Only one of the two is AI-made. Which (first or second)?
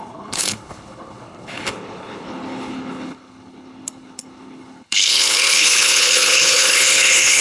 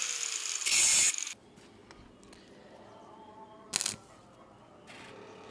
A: first